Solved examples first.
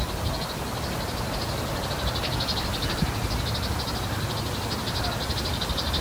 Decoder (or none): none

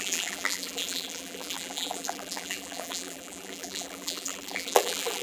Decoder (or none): vocoder, BigVGAN v2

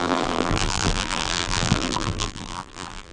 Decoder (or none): vocoder, BigVGAN v2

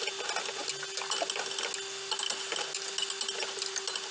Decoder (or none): none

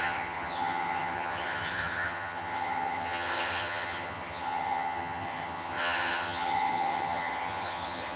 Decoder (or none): vocoder, HiFi-GAN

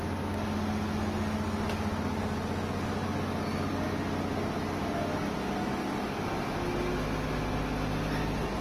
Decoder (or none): none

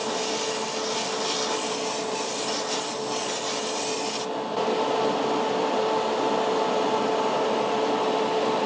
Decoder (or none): none